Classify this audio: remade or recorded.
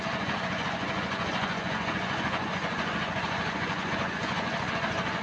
remade